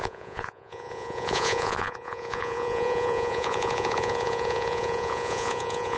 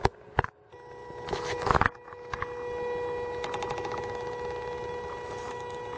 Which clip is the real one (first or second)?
second